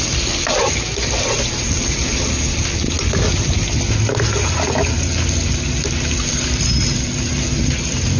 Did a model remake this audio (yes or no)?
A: no